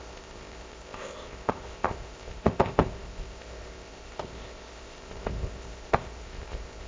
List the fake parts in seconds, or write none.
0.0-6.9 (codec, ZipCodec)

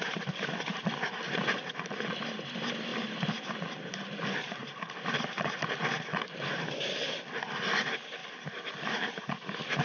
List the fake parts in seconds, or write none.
2.9-3.9 (vocoder, BigVGAN v2); 8.2-9.1